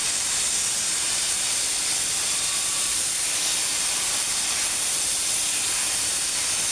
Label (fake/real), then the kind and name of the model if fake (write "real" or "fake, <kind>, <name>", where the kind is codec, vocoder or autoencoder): fake, vocoder, BigVGAN v2